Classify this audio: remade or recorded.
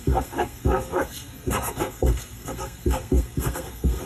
remade